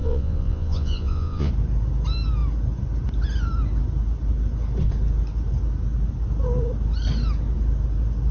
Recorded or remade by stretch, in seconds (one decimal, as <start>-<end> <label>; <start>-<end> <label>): 0.0-1.5 remade; 1.5-8.3 recorded